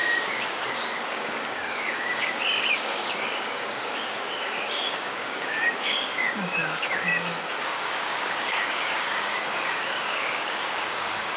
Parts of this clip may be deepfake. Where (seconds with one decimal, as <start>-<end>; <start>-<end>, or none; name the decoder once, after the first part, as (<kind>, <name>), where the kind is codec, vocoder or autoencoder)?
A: 0.0-11.4 (codec, DAC)